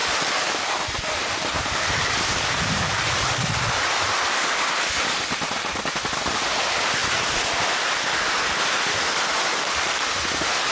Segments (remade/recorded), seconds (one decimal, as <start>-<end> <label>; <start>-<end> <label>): 0.0-4.3 remade; 4.3-10.7 recorded